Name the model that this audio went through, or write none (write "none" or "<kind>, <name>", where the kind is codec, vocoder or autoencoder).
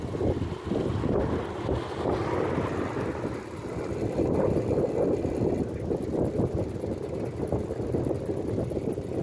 none